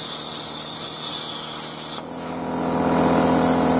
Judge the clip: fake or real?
real